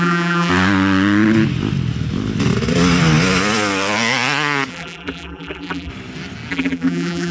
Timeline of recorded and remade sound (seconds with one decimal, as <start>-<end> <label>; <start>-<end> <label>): 0.0-0.5 remade; 0.5-4.7 recorded; 4.7-5.9 remade; 5.9-6.5 recorded; 6.5-7.3 remade